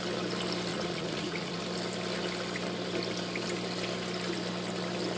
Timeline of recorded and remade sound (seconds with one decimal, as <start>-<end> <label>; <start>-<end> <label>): 0.0-0.7 recorded; 0.7-1.6 remade; 1.6-5.2 recorded